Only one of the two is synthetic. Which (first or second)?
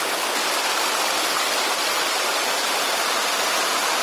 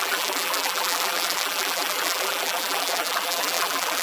second